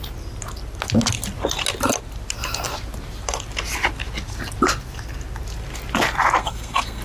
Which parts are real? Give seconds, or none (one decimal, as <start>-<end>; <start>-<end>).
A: 0.0-6.4

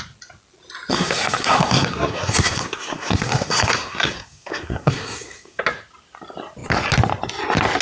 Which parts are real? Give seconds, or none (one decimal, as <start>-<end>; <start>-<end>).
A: 0.0-0.9; 5.6-7.8